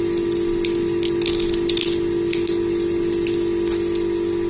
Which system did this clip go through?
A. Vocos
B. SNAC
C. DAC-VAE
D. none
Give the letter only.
D